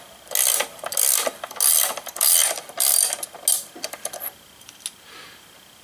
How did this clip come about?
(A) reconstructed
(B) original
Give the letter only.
B